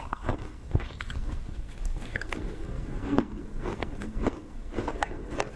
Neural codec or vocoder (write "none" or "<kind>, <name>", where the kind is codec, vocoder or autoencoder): codec, SNAC